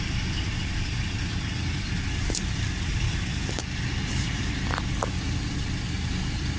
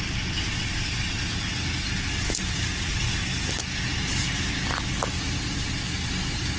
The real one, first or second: second